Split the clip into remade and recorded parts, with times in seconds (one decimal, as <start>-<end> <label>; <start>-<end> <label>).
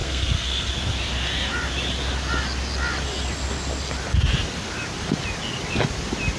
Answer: 0.0-0.7 remade; 0.7-6.4 recorded